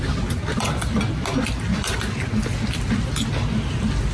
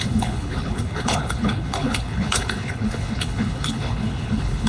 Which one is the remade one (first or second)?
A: second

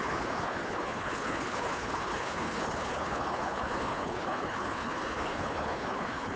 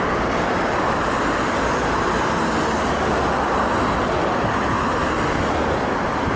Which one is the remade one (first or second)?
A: first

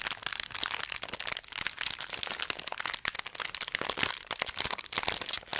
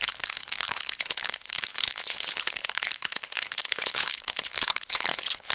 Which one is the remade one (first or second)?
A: second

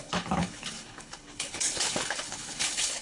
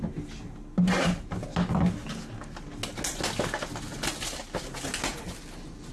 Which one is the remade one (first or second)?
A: first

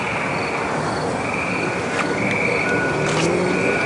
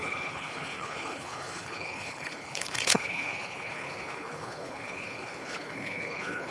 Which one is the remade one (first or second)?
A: second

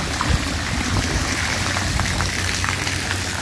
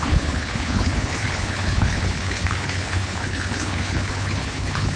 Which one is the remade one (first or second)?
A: second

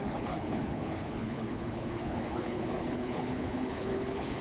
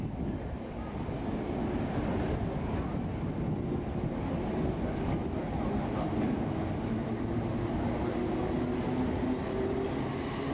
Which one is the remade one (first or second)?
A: first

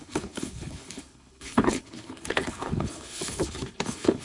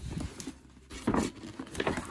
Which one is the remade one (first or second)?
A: first